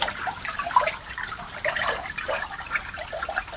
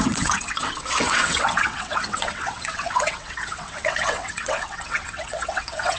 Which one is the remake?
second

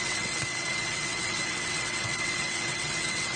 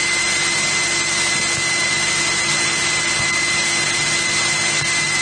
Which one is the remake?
first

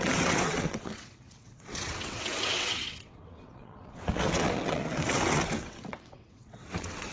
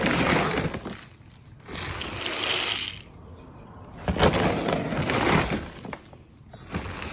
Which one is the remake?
first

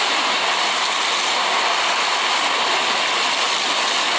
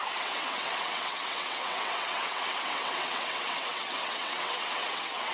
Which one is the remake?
second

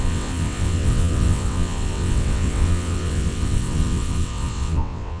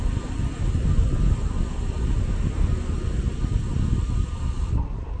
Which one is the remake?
first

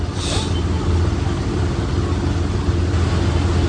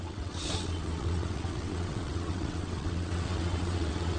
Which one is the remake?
second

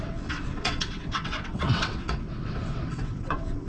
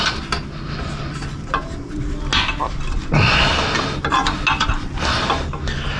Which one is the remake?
first